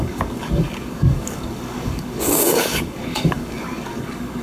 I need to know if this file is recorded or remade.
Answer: remade